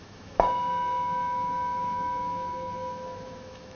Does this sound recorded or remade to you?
remade